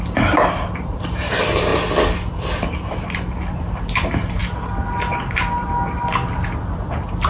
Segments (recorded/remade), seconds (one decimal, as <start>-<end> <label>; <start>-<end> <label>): 0.0-7.3 recorded